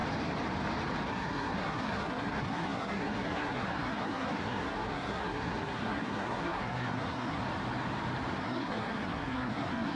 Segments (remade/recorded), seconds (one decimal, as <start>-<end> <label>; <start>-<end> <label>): 0.0-1.1 recorded; 1.1-7.4 remade; 7.4-8.4 recorded; 8.4-9.9 remade

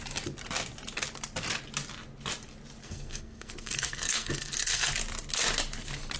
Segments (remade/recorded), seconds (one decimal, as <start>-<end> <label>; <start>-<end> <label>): 0.0-2.8 recorded; 2.8-4.9 remade; 4.9-6.2 recorded

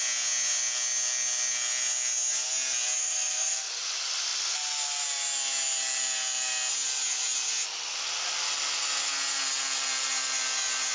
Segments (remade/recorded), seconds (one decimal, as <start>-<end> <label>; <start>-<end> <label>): 0.0-3.0 recorded; 3.0-3.8 remade; 3.8-10.9 recorded

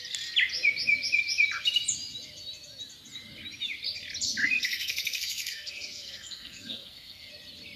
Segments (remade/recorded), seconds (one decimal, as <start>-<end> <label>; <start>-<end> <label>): 0.0-4.4 recorded; 4.4-7.3 remade; 7.3-7.8 recorded